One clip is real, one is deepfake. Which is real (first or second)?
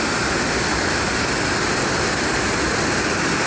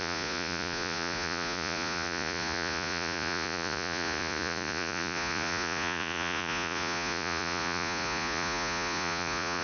first